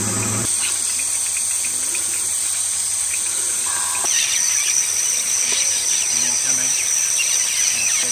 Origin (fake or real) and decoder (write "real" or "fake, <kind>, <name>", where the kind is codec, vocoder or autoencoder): real